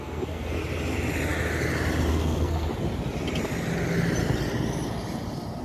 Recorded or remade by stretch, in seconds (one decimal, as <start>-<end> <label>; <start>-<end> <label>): 0.0-0.6 remade; 0.6-2.1 recorded; 2.1-2.7 remade; 2.7-5.6 recorded